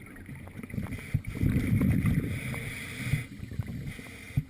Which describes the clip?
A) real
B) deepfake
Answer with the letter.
A